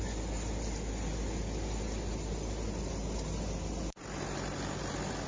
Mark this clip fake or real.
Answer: real